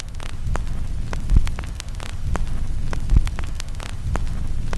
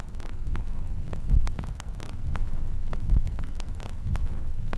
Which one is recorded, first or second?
first